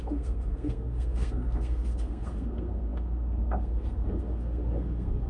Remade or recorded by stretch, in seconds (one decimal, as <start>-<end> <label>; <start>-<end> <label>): 0.0-5.3 remade